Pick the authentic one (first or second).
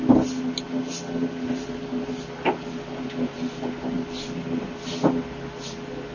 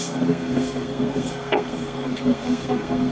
first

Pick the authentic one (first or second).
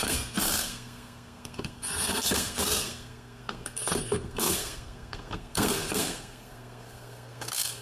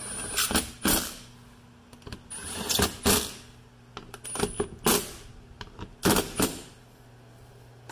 second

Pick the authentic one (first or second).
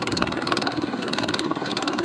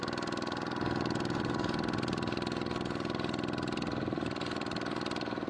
second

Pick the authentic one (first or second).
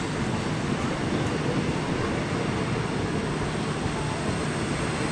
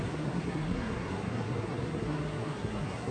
first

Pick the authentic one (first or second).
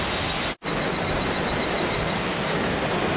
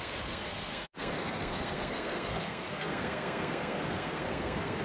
first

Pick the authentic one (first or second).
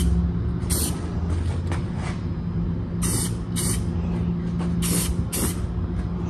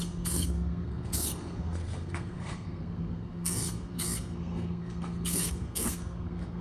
first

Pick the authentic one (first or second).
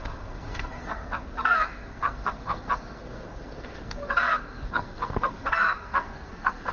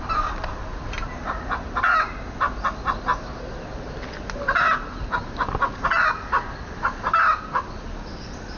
second